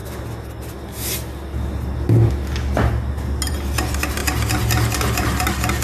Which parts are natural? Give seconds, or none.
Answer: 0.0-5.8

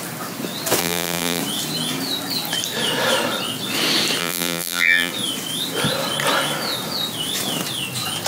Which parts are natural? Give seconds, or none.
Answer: 0.0-0.8; 1.4-4.2; 5.1-8.3

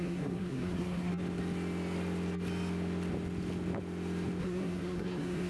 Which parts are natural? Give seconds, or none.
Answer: 1.1-4.4

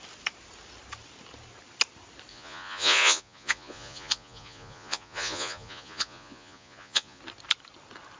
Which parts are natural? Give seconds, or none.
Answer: 0.0-2.3; 7.2-8.2

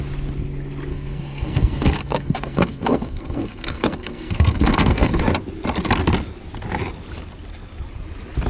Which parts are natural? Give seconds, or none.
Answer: 0.0-0.9; 5.2-8.5